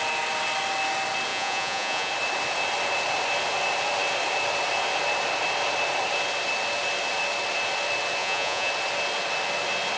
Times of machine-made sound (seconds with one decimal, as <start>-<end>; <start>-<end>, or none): 1.3-2.1; 8.2-8.7